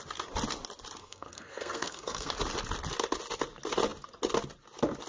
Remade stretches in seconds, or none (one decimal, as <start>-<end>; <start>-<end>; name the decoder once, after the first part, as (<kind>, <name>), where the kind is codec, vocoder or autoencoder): 1.0-2.3 (codec, SNAC)